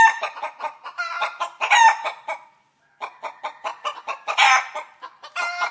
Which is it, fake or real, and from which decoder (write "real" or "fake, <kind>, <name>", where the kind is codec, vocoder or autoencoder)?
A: real